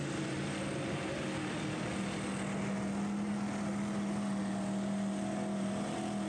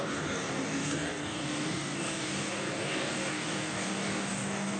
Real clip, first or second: first